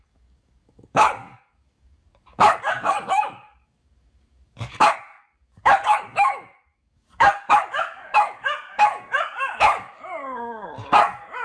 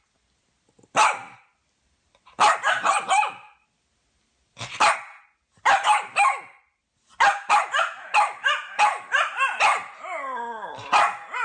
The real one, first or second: second